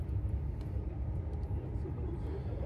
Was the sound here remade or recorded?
remade